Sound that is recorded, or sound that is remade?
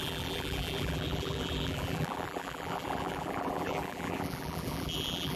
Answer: remade